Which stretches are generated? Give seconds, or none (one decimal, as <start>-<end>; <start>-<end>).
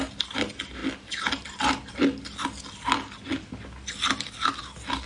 none